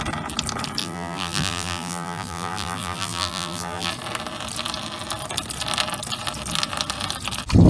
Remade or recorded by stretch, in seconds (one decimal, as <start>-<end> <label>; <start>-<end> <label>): 0.0-0.8 recorded; 0.8-3.9 remade; 3.9-7.7 recorded